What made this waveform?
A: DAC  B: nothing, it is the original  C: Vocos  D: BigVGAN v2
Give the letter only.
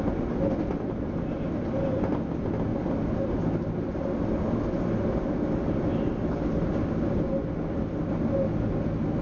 B